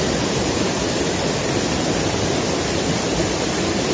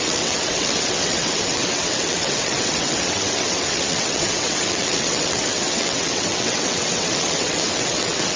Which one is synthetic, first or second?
second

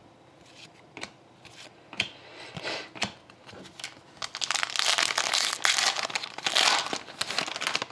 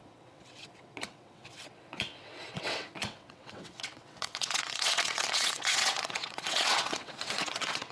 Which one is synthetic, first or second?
second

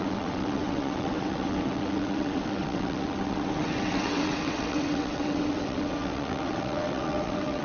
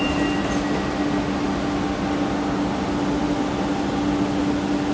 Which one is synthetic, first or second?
first